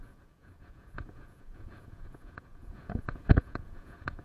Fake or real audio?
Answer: fake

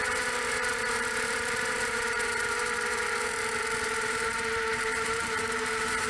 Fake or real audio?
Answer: fake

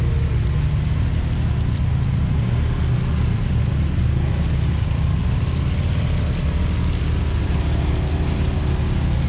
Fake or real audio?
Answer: real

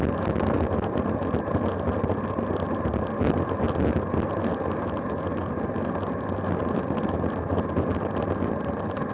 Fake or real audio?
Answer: real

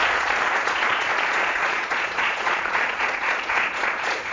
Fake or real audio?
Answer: fake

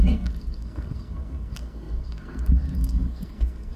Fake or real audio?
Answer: fake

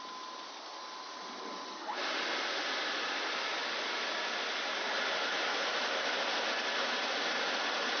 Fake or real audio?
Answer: real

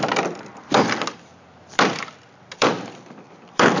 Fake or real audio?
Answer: fake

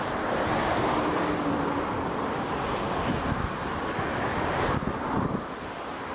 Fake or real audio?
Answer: real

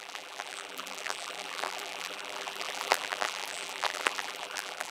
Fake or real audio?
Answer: fake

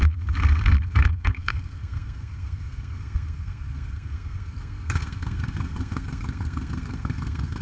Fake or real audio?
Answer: fake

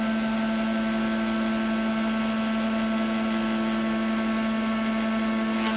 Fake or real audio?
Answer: real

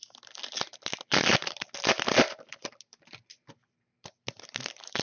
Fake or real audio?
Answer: real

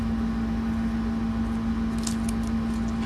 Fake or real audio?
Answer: real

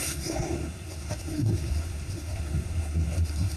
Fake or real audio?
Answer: fake